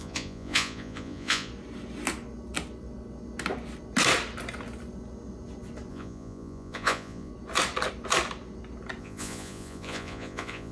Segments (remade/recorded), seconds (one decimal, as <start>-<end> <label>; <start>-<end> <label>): 0.0-1.5 remade; 1.5-5.9 recorded; 5.9-7.3 remade; 7.3-9.0 recorded; 9.0-10.7 remade